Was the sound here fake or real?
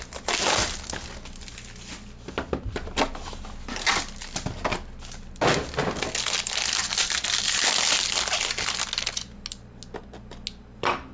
real